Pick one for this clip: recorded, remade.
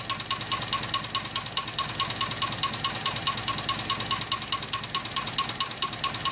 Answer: recorded